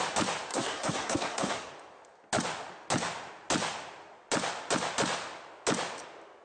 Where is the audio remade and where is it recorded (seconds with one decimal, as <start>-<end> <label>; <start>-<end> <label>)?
0.0-0.5 recorded; 0.5-1.7 remade; 1.7-6.4 recorded